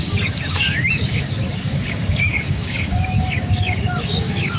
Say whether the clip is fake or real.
fake